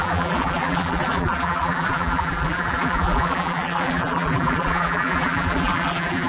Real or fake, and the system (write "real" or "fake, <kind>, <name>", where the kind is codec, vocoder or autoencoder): fake, vocoder, BigVGAN v2